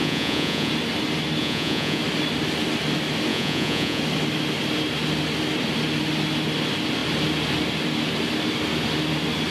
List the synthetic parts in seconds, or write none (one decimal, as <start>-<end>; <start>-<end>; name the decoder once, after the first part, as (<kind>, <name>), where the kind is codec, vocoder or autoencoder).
0.0-0.7 (vocoder, Vocos); 1.4-2.0; 3.3-4.0